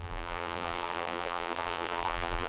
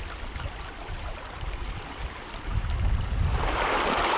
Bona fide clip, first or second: second